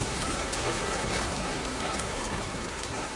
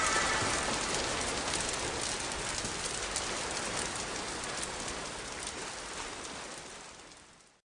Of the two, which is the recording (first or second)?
second